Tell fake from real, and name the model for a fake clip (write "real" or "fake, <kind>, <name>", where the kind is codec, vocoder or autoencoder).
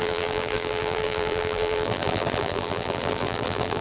fake, vocoder, BigVGAN v2